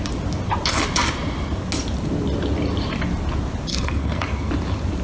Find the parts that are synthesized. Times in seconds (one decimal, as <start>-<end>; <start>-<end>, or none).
3.7-4.5